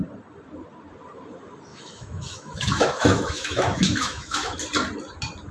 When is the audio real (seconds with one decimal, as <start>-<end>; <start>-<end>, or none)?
0.0-1.7; 4.6-5.5